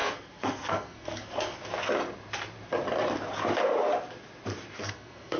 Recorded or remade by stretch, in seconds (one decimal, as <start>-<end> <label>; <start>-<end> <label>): 0.0-1.6 remade; 1.6-4.8 recorded; 4.8-5.4 remade